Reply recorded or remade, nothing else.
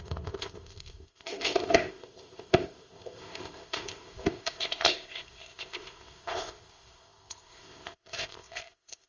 remade